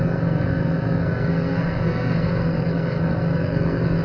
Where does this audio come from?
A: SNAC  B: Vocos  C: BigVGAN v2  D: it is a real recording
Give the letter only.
A